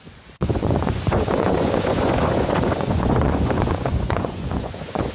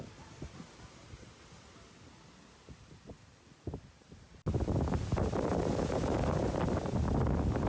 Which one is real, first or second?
second